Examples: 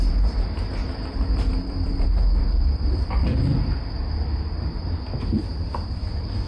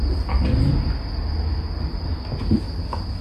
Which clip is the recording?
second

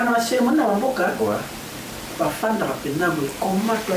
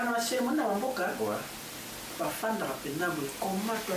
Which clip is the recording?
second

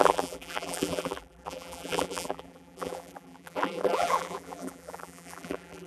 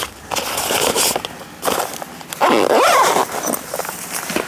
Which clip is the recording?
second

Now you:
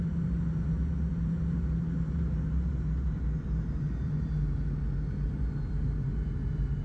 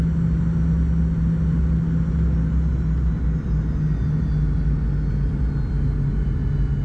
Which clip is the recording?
second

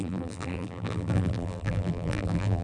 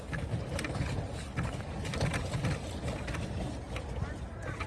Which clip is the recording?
second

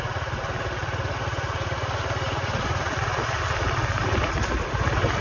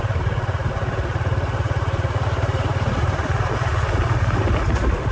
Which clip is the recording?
first